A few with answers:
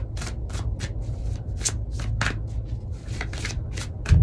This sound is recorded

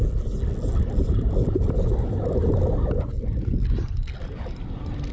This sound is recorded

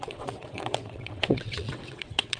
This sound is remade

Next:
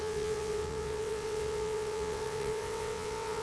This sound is remade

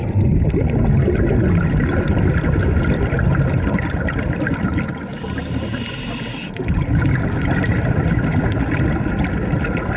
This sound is recorded